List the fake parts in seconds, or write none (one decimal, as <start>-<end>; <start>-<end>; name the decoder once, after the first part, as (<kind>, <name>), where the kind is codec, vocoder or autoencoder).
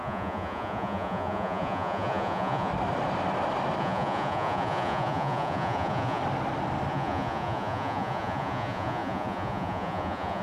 0.0-2.7 (vocoder, Vocos); 3.8-6.2; 6.9-10.4